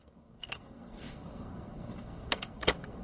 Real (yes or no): no